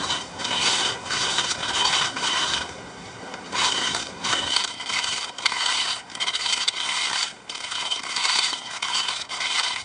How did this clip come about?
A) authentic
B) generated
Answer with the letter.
B